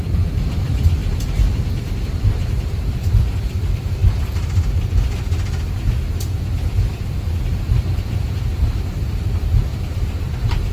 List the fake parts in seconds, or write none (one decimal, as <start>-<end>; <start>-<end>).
0.0-4.0; 7.1-9.7; 10.2-10.7